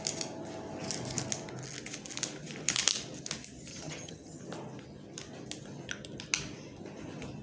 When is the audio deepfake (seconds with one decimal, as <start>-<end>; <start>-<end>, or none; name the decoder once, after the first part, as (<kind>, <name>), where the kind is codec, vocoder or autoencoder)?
3.7-4.4 (vocoder, HiFi-GAN)